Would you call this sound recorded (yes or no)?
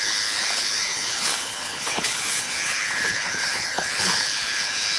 no